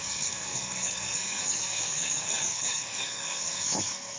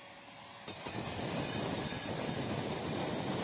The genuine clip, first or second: second